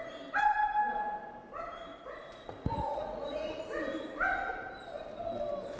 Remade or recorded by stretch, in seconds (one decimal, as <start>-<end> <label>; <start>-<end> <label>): 0.0-1.9 recorded; 1.9-3.6 remade; 3.6-5.8 recorded